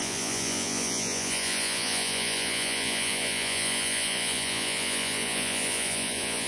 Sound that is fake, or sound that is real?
fake